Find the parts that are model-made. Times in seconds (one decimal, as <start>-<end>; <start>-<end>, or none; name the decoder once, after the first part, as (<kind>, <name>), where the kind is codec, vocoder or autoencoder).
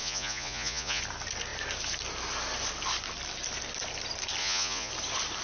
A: 0.0-1.0 (vocoder, Vocos); 4.4-4.9